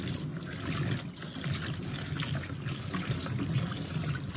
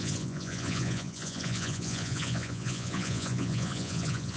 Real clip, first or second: first